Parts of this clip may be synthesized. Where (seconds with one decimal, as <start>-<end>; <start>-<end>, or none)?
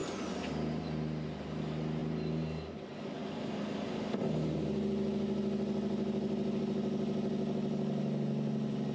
none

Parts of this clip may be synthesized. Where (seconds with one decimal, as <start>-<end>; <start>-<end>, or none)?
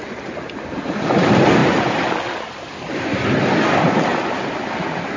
4.1-4.7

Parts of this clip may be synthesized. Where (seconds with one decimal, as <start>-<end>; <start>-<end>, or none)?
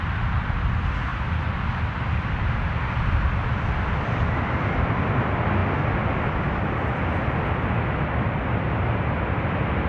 none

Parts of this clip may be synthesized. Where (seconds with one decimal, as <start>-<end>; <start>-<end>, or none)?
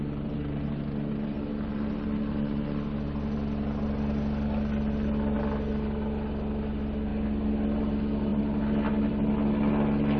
none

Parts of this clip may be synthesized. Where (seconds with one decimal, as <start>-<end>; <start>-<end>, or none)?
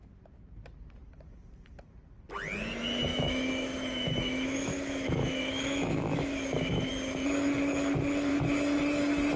3.1-6.9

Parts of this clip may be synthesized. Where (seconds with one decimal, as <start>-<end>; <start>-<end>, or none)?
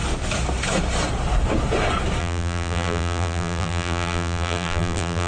2.2-5.3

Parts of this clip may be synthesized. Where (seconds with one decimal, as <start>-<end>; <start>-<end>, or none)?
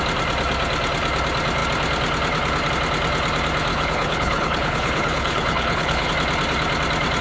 3.7-6.1